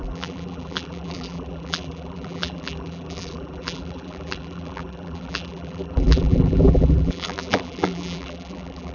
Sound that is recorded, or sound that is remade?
remade